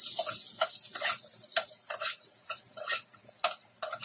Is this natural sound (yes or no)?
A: yes